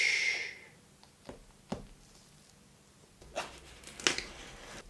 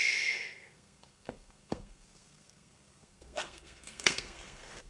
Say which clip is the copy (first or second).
second